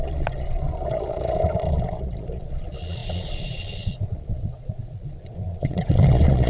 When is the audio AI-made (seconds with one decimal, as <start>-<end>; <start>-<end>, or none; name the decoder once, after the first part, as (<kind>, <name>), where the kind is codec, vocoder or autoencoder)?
0.0-6.5 (vocoder, Vocos)